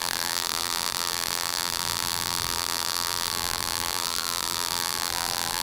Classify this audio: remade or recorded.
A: remade